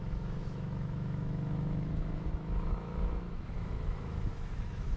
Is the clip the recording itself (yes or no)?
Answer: no